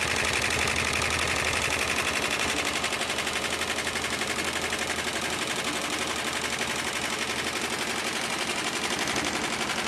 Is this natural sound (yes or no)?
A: yes